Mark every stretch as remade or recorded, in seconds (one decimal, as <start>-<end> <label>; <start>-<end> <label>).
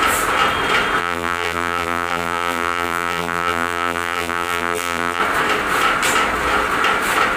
0.0-1.0 recorded; 1.0-5.2 remade; 5.2-7.4 recorded